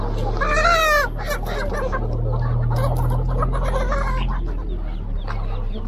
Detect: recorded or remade recorded